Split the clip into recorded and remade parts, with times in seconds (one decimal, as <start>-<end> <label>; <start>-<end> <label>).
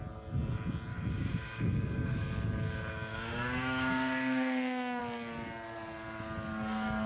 0.0-0.9 recorded; 0.9-5.0 remade; 5.0-7.1 recorded